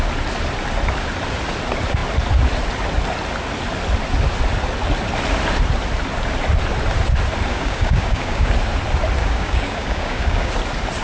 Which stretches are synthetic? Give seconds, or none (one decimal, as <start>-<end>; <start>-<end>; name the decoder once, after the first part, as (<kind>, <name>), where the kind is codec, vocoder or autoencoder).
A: 7.5-8.5 (codec, DAC); 9.2-10.5